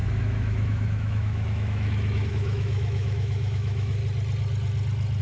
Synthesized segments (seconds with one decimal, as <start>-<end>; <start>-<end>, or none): 0.0-4.0